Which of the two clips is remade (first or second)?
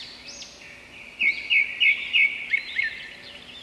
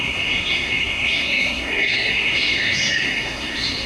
second